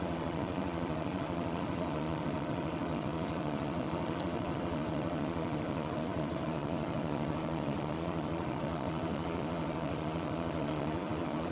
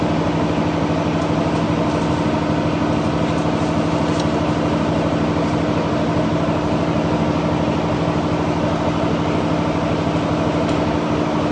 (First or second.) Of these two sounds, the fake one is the first